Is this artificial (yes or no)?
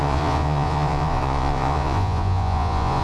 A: yes